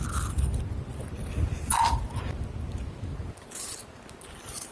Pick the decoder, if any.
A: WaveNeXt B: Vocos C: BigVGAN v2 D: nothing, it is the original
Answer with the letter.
D